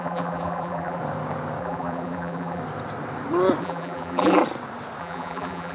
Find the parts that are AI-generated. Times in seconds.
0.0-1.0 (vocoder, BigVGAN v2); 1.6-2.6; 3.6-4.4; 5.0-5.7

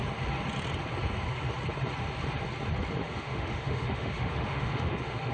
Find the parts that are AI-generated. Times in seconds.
3.0-5.3 (autoencoder, DAC-VAE)

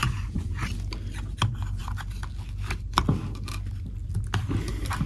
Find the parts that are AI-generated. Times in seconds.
0.0-0.6 (vocoder, Vocos)

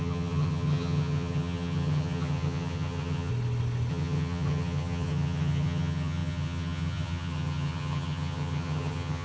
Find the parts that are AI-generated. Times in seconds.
0.0-3.3 (vocoder, HiFi-GAN); 3.9-9.2

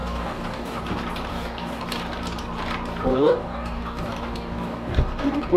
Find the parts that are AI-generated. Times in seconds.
0.0-0.8 (codec, DAC); 1.3-1.8; 3.1-5.6

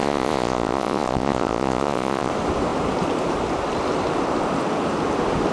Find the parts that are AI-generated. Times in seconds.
0.0-2.3 (vocoder, Vocos)